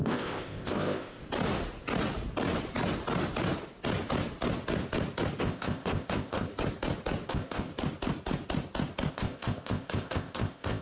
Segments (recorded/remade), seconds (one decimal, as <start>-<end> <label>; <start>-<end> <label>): 0.0-1.2 remade; 1.2-5.4 recorded; 5.4-6.5 remade; 6.5-7.3 recorded; 7.3-7.7 remade; 7.7-9.1 recorded; 9.1-10.8 remade